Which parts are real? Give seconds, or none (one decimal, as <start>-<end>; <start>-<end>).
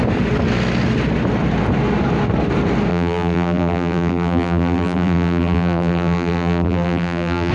0.0-2.9